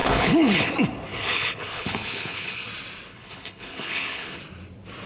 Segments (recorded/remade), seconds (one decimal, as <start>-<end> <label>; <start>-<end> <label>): 0.0-0.7 remade; 0.7-1.1 recorded; 1.1-2.7 remade; 2.7-3.1 recorded; 3.1-4.4 remade; 4.4-5.1 recorded

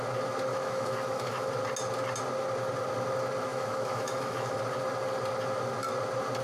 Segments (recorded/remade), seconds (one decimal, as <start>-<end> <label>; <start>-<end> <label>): 0.0-0.5 recorded; 0.5-1.5 remade; 1.5-3.5 recorded; 3.5-4.6 remade; 4.6-6.4 recorded